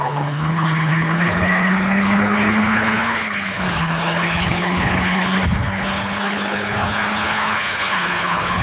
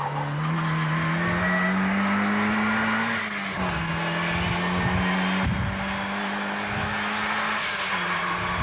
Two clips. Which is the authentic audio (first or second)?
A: second